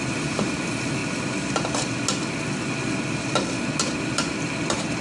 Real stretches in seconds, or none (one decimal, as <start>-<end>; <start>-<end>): 1.0-4.0